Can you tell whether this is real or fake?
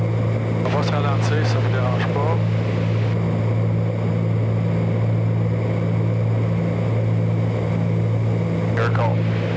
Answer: real